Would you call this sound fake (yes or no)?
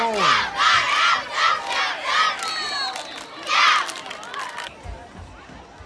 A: no